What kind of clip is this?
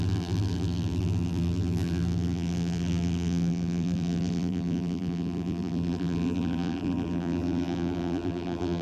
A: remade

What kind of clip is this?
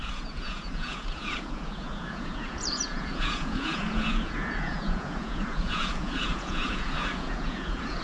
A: remade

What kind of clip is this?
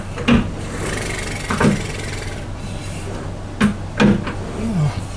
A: recorded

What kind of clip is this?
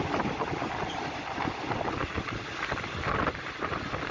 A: recorded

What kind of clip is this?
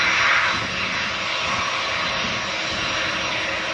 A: recorded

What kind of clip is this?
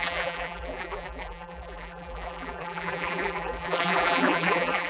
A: remade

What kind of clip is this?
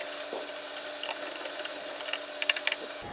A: recorded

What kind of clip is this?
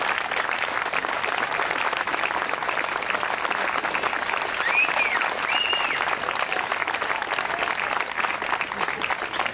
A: recorded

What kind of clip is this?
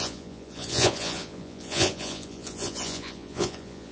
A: remade